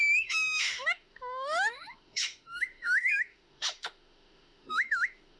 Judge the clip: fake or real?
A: fake